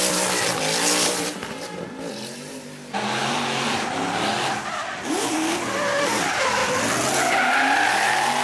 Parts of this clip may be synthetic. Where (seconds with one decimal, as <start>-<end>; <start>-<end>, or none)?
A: none